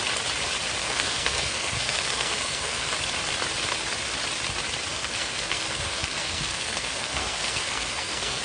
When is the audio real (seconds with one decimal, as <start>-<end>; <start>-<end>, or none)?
0.0-0.8; 2.9-4.9